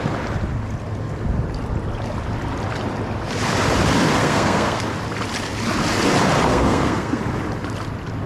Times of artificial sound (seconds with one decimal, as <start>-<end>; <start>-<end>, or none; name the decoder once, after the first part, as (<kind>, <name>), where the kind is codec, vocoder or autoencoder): 4.2-4.8 (codec, SNAC); 6.5-7.2